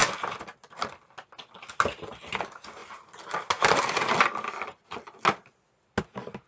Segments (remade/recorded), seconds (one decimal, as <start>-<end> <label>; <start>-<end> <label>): 0.0-6.5 recorded